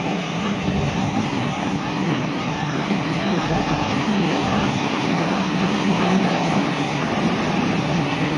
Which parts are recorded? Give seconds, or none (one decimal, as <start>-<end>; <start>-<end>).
7.1-7.8